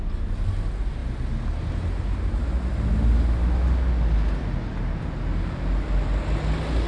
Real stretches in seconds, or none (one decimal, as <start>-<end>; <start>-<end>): 0.0-6.9